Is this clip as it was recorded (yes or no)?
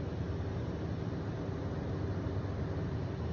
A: yes